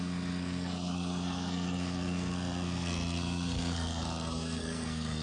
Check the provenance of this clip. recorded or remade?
remade